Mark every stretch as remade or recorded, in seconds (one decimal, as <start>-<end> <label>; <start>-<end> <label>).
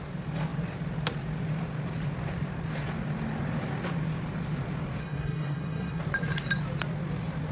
0.0-5.0 recorded; 5.0-6.0 remade; 6.0-7.5 recorded